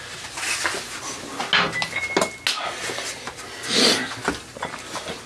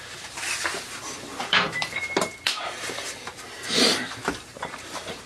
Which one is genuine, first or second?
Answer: first